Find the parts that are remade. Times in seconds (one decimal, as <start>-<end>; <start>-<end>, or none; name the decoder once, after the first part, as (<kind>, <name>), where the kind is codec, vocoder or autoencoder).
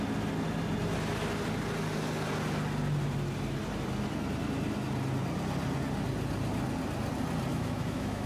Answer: 7.5-8.3 (autoencoder, DAC-VAE)